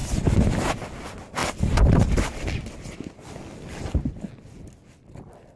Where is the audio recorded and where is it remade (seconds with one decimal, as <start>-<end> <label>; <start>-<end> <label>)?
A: 0.0-5.6 recorded